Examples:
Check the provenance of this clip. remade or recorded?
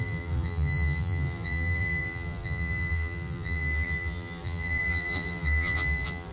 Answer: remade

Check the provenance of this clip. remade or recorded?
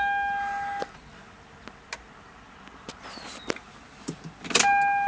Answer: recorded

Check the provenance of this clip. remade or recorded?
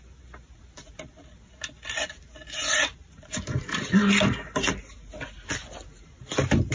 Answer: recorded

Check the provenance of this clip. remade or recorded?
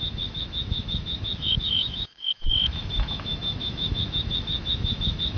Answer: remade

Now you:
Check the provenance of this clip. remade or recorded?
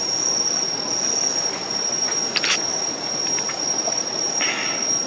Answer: recorded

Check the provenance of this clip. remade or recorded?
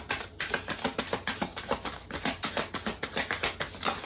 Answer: recorded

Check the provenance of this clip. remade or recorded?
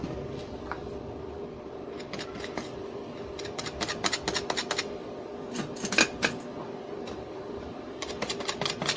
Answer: recorded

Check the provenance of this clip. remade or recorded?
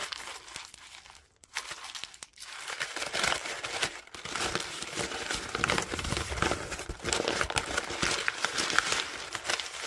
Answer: recorded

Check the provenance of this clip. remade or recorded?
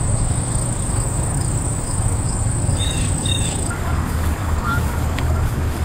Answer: remade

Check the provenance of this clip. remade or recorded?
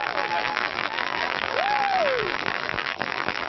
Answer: remade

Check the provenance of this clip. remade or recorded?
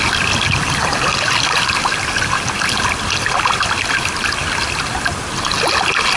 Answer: recorded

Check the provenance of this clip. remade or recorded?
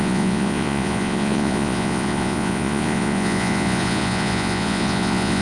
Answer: remade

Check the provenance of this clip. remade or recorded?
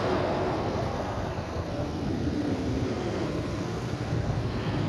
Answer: remade